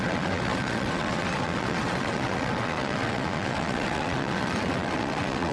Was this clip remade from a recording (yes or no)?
yes